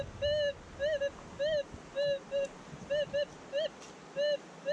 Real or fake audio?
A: real